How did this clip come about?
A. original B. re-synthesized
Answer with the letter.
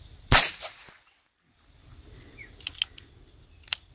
A